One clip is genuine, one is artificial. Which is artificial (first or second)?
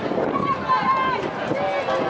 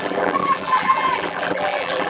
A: second